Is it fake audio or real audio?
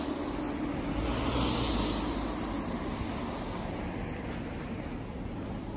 real